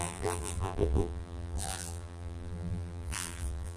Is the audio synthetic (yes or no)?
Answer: yes